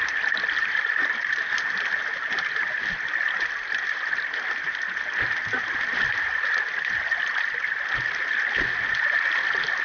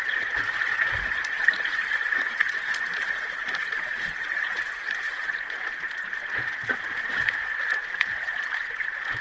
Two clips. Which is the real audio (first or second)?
first